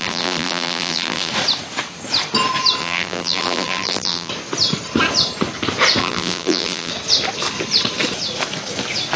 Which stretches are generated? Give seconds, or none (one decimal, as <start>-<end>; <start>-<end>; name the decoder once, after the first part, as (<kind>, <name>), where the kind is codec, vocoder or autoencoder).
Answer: 0.0-1.3 (vocoder, BigVGAN v2); 2.8-4.3; 6.0-6.9